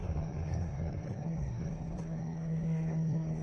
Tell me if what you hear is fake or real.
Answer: fake